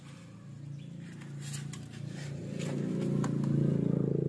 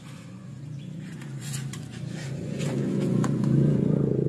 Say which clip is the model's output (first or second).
second